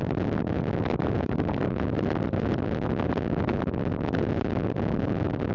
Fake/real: real